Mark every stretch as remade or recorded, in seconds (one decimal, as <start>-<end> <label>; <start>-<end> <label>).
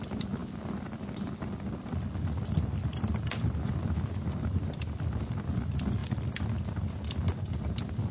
0.0-8.1 recorded